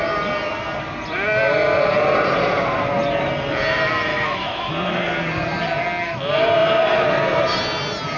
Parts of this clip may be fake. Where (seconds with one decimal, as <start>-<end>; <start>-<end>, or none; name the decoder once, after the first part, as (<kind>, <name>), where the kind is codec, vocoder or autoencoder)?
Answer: 4.1-4.7 (autoencoder, DAC-VAE)